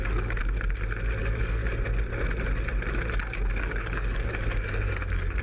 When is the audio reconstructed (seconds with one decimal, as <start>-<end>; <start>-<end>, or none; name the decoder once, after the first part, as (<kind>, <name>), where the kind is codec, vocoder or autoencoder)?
0.0-0.4 (codec, DAC); 1.2-1.6; 3.5-5.4

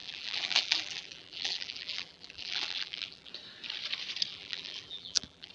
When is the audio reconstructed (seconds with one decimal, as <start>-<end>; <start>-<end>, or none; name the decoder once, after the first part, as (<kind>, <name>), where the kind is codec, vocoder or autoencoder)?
0.0-3.3 (vocoder, BigVGAN v2); 4.3-5.5

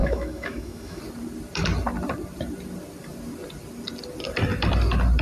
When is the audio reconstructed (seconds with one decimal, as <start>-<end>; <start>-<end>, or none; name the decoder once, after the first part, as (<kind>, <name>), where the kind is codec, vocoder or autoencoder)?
0.0-1.0 (autoencoder, DAC-VAE)

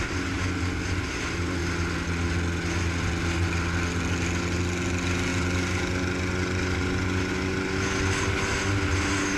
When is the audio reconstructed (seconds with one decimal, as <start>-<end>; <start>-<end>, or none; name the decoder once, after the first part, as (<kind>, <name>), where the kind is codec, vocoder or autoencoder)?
none

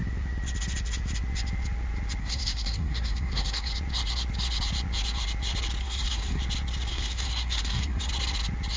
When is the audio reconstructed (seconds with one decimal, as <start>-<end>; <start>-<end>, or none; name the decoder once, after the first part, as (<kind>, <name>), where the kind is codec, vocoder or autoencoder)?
2.2-3.7 (codec, SNAC); 5.8-6.4; 6.9-8.1

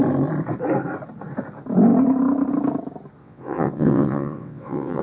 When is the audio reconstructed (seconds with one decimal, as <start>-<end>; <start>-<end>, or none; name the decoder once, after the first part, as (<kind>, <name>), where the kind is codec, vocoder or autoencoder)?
3.2-5.0 (vocoder, WaveNeXt)

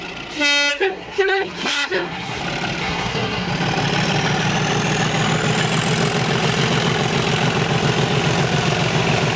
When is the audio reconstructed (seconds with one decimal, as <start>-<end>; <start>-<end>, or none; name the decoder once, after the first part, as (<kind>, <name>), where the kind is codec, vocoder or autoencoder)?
0.7-2.4 (codec, SNAC); 2.8-3.5